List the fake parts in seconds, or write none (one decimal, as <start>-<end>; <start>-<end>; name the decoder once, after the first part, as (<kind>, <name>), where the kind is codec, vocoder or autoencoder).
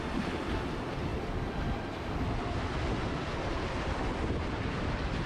0.0-1.1 (vocoder, BigVGAN v2); 4.3-5.3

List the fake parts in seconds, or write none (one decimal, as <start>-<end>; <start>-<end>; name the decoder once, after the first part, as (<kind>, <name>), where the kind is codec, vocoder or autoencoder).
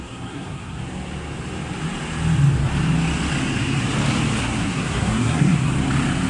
0.0-0.8 (codec, SNAC); 4.4-5.7